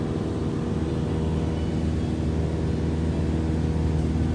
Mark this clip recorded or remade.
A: recorded